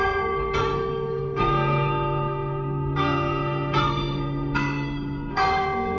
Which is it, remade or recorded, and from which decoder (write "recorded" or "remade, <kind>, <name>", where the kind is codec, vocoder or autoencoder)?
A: remade, codec, SNAC